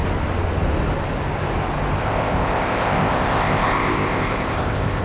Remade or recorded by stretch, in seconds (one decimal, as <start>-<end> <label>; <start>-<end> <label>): 0.0-2.0 recorded; 2.0-5.0 remade